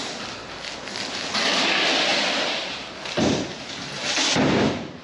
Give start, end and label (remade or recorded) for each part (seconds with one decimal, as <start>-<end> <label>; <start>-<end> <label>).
0.0-5.0 recorded